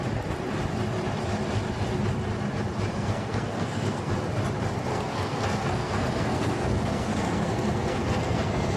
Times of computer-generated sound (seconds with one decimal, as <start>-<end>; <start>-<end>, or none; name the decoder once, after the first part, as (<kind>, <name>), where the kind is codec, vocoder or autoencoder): 2.9-4.1 (codec, SNAC); 4.9-8.8

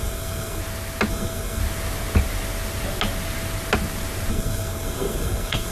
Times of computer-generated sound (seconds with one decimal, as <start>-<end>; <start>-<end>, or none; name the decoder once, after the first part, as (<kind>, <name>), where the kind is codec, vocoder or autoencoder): 0.0-0.6 (codec, SNAC); 1.1-1.6; 4.3-5.7